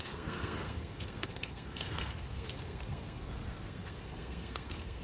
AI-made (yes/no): yes